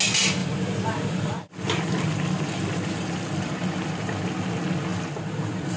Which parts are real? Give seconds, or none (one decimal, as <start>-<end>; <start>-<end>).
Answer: 0.0-0.4; 3.5-4.9